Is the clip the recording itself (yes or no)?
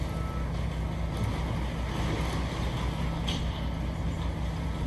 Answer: yes